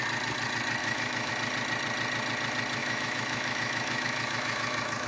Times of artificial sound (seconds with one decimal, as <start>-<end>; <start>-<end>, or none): 0.8-1.3; 2.8-5.1